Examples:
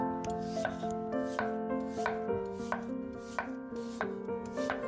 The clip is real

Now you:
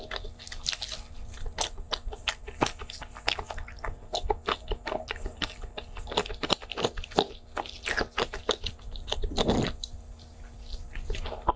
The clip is real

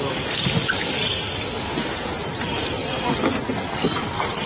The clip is real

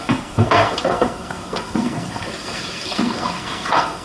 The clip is fake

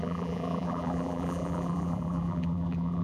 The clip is fake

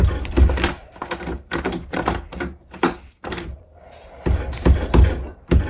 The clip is fake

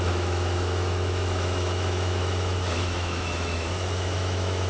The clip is fake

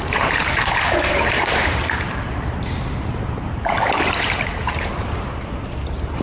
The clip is fake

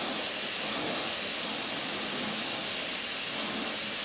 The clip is real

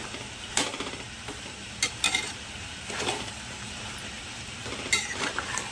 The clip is fake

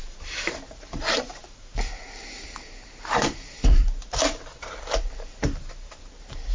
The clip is fake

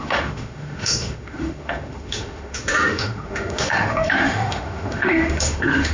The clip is fake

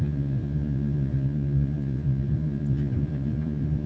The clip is fake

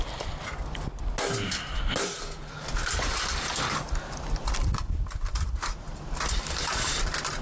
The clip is real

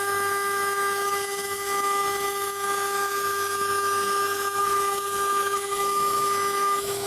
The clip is fake